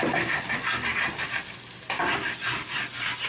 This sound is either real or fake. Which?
real